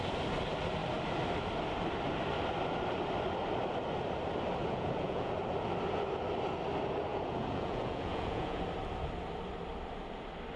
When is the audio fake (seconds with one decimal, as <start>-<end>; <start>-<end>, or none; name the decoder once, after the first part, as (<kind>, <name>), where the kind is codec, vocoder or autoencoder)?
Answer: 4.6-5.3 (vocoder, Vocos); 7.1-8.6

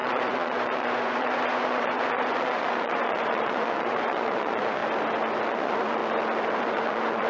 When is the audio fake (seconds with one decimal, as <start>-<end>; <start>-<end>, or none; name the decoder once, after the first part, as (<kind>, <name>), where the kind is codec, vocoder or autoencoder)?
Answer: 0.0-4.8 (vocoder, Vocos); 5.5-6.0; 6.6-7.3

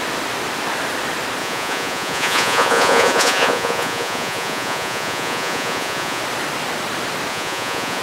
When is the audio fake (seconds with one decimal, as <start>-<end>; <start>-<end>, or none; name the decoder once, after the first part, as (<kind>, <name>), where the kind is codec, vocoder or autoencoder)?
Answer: 1.4-6.2 (vocoder, Vocos); 7.3-8.0